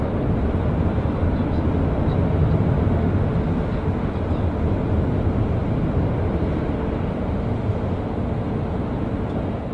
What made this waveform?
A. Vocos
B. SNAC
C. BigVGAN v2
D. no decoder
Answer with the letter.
D